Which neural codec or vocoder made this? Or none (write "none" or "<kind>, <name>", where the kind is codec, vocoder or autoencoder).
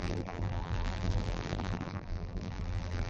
vocoder, BigVGAN v2